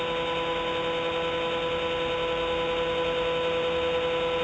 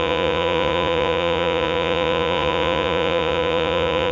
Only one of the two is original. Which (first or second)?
first